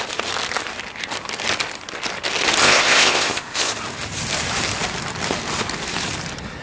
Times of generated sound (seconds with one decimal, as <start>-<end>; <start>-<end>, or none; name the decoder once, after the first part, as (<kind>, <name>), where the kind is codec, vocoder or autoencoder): 2.6-3.7 (codec, ZipCodec)